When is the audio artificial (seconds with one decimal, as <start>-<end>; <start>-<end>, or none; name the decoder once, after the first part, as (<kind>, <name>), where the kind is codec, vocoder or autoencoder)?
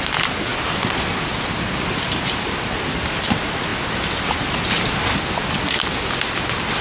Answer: none